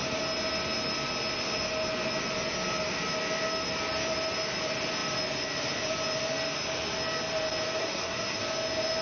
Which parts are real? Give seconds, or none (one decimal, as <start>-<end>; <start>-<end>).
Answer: 0.0-7.8; 8.4-9.0